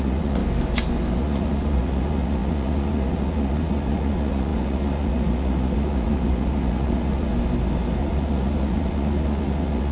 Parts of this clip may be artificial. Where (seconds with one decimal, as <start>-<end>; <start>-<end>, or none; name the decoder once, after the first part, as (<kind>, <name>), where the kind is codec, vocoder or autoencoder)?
0.0-0.4 (vocoder, Vocos); 1.2-7.3; 8.0-9.9